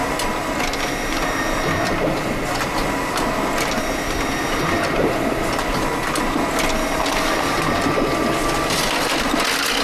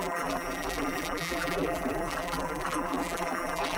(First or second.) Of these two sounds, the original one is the first